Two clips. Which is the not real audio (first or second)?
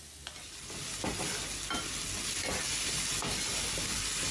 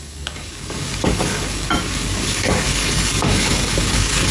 second